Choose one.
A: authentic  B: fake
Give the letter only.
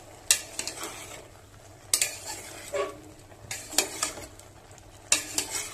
A